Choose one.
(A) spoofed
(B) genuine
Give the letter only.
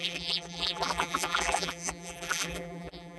A